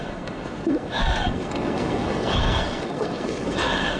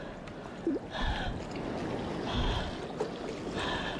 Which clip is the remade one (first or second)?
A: first